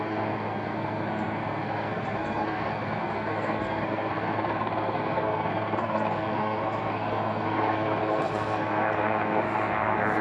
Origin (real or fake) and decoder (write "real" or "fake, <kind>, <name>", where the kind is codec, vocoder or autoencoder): fake, codec, SNAC